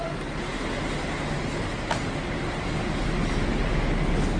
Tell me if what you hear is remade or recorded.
recorded